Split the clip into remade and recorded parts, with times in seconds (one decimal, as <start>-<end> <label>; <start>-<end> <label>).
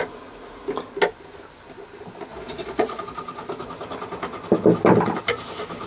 0.0-2.3 recorded; 2.3-3.0 remade; 3.0-5.9 recorded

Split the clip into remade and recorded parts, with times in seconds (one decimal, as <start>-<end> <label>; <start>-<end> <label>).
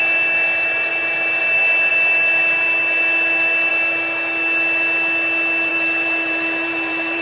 0.0-5.7 recorded; 5.7-7.2 remade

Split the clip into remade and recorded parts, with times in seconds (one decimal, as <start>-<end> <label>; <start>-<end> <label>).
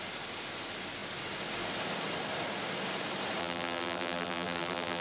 0.0-3.4 recorded; 3.4-5.0 remade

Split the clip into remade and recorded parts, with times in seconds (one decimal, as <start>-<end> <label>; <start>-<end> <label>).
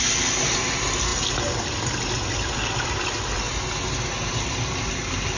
0.0-5.4 recorded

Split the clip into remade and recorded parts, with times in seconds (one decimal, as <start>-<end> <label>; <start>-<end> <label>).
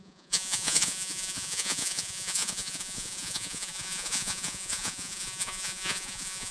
0.0-6.5 remade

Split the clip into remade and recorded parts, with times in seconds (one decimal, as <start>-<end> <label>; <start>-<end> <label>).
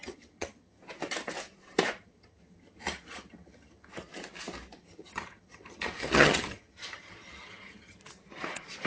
0.0-0.8 remade; 0.8-2.0 recorded; 2.0-3.9 remade; 3.9-4.8 recorded; 4.8-8.0 remade; 8.0-8.9 recorded